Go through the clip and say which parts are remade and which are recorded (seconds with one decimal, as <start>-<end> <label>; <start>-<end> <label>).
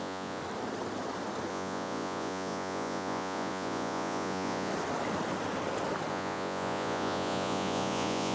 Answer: 0.0-0.4 remade; 0.4-1.5 recorded; 1.5-4.7 remade; 4.7-6.1 recorded; 6.1-8.3 remade